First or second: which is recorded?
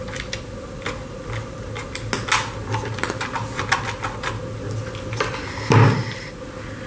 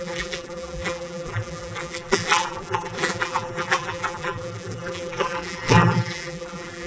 first